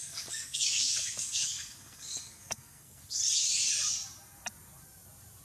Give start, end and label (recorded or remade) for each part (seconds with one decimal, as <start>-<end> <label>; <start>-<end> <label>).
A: 0.0-3.2 remade; 3.2-5.4 recorded